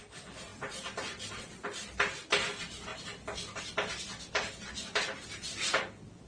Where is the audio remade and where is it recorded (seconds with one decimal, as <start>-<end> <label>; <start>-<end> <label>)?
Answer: 0.0-6.3 recorded

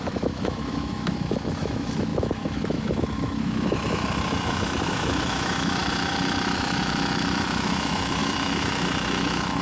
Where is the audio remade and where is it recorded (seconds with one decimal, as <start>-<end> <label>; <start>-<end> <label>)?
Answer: 0.0-9.6 remade

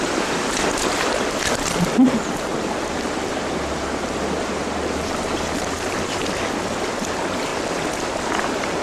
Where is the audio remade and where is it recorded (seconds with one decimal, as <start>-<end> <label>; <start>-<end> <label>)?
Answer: 0.0-2.5 recorded; 2.5-6.3 remade; 6.3-8.8 recorded

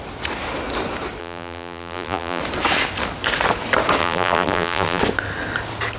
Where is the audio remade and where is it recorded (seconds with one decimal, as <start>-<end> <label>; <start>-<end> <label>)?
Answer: 0.0-1.2 recorded; 1.2-2.4 remade; 2.4-4.0 recorded; 4.0-5.0 remade; 5.0-6.0 recorded

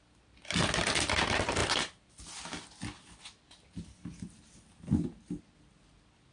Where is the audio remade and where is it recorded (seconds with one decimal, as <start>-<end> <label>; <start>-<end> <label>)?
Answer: 0.0-6.3 recorded